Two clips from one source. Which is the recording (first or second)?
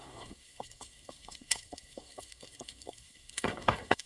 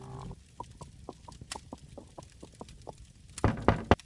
second